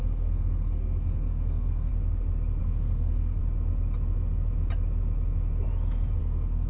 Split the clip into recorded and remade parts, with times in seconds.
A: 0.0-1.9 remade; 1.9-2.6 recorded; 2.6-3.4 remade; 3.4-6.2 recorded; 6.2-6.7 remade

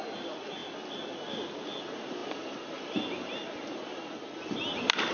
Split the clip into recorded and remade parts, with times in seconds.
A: 0.0-5.1 recorded

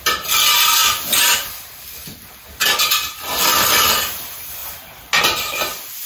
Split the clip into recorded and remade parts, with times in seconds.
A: 0.0-6.1 recorded

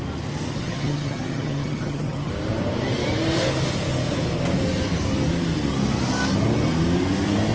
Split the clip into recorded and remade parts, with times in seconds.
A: 0.0-0.5 recorded; 0.5-2.3 remade; 2.3-7.5 recorded